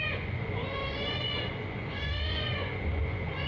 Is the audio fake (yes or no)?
yes